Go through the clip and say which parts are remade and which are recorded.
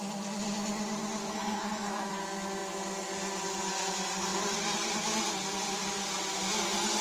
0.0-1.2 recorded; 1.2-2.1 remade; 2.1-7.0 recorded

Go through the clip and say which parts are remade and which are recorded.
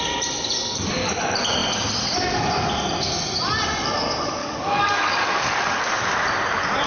0.0-4.4 recorded; 4.4-5.8 remade; 5.8-6.9 recorded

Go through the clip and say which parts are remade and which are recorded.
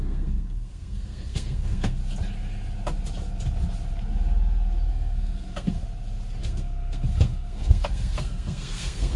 0.0-2.0 remade; 2.0-4.9 recorded; 4.9-5.8 remade; 5.8-6.4 recorded; 6.4-9.2 remade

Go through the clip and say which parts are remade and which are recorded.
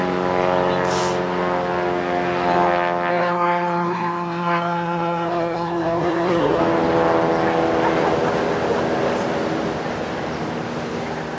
0.0-3.1 recorded; 3.1-6.6 remade; 6.6-11.4 recorded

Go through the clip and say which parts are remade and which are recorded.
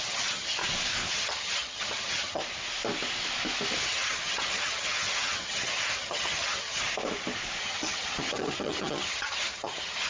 0.0-0.6 remade; 0.6-1.1 recorded; 1.1-2.4 remade; 2.4-3.8 recorded; 3.8-6.8 remade; 6.8-7.6 recorded; 7.6-10.1 remade